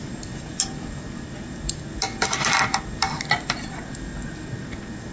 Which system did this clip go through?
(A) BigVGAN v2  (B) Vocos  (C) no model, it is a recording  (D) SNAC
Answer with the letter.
C